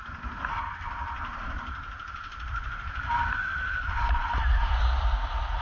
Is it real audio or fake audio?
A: real